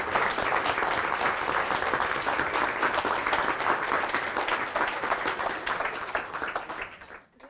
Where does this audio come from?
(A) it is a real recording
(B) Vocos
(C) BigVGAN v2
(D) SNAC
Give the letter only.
C